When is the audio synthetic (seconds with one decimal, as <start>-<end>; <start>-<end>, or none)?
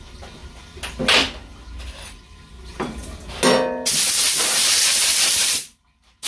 0.0-0.4; 4.2-6.3